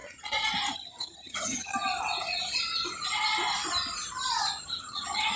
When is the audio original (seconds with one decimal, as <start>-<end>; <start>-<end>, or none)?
0.0-0.7; 1.7-4.8